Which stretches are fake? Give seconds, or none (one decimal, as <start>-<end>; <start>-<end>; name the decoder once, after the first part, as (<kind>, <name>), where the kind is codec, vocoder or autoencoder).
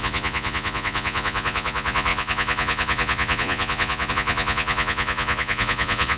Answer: 0.0-6.2 (vocoder, Vocos)